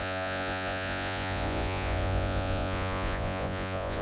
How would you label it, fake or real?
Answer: fake